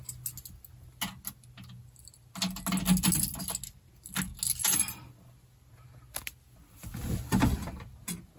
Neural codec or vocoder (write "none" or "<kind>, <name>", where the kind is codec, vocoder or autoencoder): none